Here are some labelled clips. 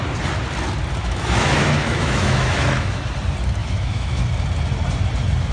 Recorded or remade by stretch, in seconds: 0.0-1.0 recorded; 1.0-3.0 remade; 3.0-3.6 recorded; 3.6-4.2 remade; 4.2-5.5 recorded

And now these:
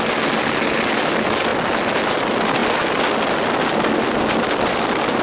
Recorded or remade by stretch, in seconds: 0.0-5.2 recorded

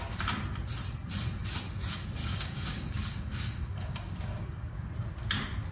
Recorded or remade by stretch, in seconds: 0.0-2.2 recorded; 2.2-4.9 remade; 4.9-5.7 recorded